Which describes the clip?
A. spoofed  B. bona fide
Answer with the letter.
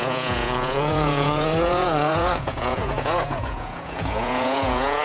A